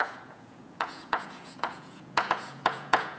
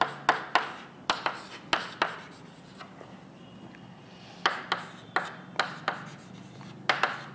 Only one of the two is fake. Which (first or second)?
first